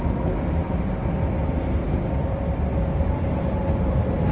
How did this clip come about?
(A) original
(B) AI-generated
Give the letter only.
A